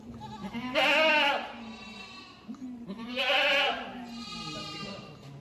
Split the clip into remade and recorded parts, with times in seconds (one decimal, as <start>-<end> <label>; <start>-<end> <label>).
0.0-5.4 recorded